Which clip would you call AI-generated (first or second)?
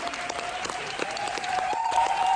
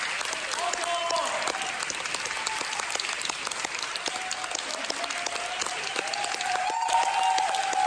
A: first